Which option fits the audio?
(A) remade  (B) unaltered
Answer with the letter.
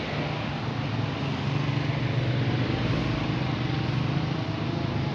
B